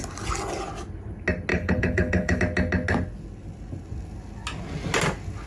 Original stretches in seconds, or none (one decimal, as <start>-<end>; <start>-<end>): 0.0-1.5; 2.4-5.5